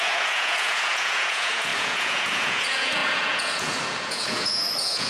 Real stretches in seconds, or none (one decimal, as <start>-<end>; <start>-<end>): none